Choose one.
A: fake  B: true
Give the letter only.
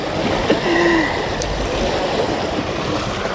B